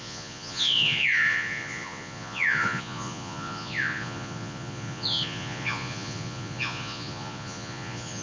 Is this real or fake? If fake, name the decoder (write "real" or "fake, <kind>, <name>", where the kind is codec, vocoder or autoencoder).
fake, vocoder, Vocos